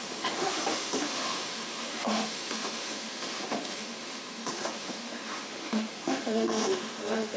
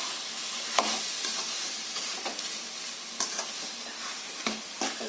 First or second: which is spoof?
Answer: first